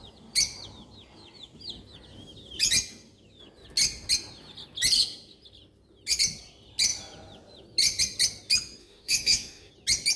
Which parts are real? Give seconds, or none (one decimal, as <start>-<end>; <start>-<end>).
0.0-8.8; 9.7-10.2